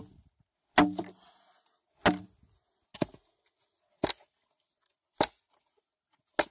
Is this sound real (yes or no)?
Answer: yes